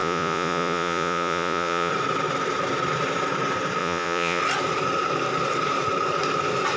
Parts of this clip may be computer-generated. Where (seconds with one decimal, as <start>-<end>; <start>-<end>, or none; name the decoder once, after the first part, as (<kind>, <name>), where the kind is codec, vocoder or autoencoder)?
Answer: 0.0-1.9 (vocoder, Vocos); 3.8-4.4